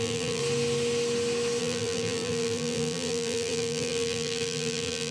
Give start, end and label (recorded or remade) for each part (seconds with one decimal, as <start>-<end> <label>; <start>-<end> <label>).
0.0-0.4 remade; 0.4-1.6 recorded; 1.6-5.1 remade